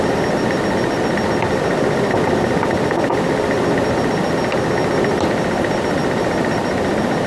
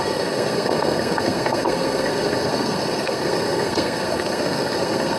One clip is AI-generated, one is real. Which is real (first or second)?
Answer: first